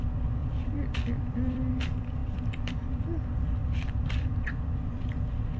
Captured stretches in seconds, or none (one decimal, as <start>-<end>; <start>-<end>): 0.0-0.4; 1.7-2.2; 2.7-3.6; 4.6-5.6